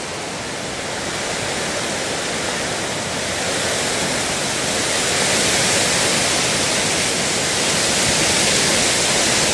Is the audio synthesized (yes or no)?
no